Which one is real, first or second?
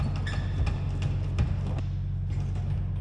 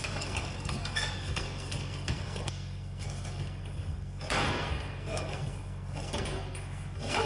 first